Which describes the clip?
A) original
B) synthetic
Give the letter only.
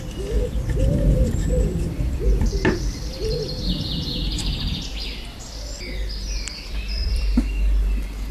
B